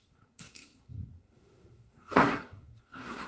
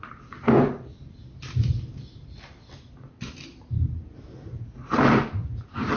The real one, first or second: second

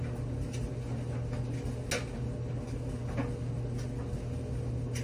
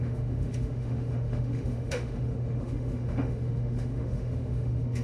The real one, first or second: first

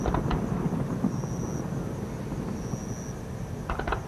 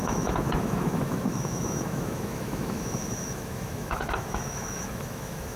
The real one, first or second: first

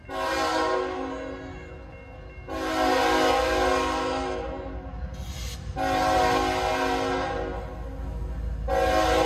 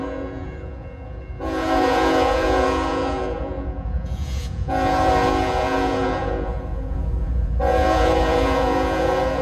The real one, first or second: first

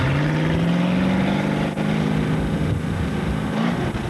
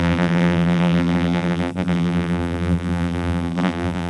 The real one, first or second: first